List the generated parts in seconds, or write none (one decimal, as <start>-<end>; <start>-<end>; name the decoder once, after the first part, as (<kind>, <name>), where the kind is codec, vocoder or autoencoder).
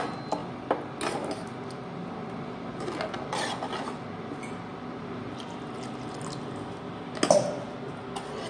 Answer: none